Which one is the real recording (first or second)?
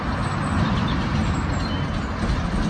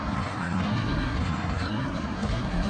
first